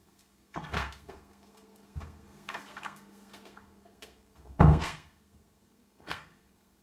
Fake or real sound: fake